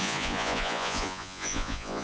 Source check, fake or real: fake